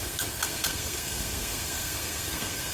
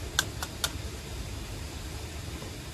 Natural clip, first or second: second